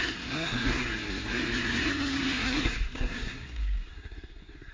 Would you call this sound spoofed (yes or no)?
yes